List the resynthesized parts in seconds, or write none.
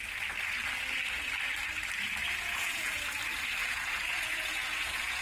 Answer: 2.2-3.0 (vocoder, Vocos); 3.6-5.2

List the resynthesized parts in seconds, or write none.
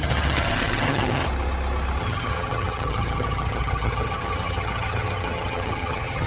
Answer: 0.0-1.2 (vocoder, HiFi-GAN); 2.0-6.3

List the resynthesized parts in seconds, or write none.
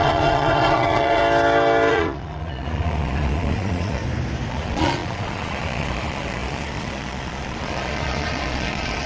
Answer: 0.0-1.2 (vocoder, Vocos); 1.9-4.0; 4.5-9.1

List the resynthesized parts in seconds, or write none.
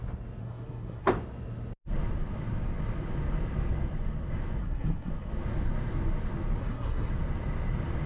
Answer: 0.4-1.1 (codec, SNAC); 4.6-5.1; 6.6-7.1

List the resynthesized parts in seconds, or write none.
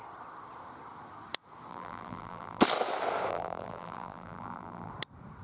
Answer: 1.7-2.6 (vocoder, BigVGAN v2); 3.3-4.9